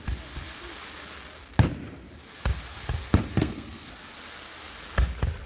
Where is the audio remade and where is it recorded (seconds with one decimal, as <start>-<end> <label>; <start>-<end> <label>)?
0.0-3.3 recorded; 3.3-3.9 remade; 3.9-5.5 recorded